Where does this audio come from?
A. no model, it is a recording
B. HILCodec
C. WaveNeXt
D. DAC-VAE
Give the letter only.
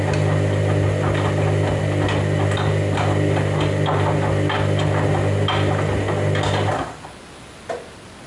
A